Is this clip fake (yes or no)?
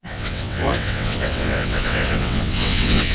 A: yes